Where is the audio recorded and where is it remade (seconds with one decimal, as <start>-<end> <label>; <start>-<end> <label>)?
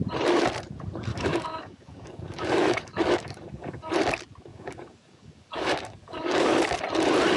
0.0-1.1 recorded; 1.1-3.9 remade; 3.9-4.5 recorded; 4.5-6.6 remade; 6.6-7.4 recorded